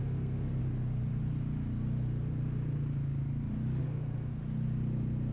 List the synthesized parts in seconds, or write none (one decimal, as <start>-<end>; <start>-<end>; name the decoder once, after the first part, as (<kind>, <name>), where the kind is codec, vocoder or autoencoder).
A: 0.0-0.6 (codec, SNAC); 3.8-4.4